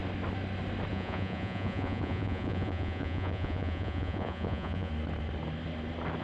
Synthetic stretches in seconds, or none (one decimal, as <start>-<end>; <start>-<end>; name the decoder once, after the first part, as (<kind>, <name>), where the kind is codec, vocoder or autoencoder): 0.9-4.9 (vocoder, Vocos)